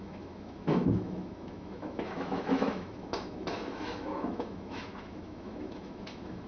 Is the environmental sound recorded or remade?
remade